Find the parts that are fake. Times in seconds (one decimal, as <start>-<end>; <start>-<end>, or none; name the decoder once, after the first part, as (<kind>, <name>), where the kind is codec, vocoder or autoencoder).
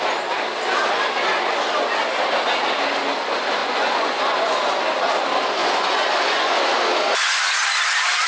3.6-4.5 (vocoder, Vocos); 5.6-6.6